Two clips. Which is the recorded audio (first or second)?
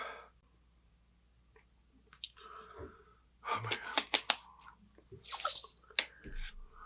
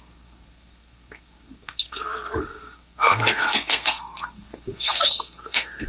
first